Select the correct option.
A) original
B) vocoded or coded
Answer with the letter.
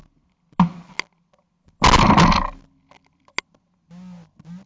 A